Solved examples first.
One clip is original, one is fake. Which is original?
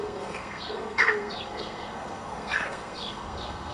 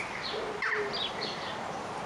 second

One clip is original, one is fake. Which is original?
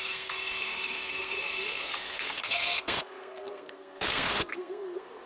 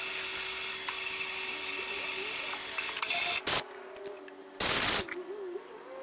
second